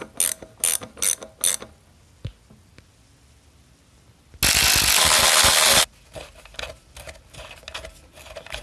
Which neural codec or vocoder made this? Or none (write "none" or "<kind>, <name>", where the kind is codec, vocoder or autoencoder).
none